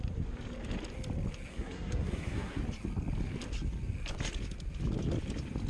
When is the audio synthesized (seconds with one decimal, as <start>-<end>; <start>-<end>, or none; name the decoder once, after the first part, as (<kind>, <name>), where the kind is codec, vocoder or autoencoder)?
1.5-2.6 (codec, SNAC)